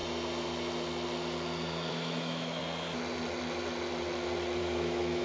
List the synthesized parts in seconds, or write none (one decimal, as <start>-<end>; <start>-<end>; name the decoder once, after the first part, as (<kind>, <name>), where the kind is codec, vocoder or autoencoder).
1.9-2.6 (autoencoder, DAC-VAE); 4.6-5.2